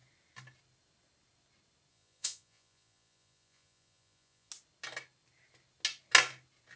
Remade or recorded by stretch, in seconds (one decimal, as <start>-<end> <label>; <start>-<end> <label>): 0.0-1.9 recorded; 1.9-4.5 remade; 4.5-6.8 recorded